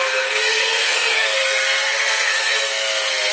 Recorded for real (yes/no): no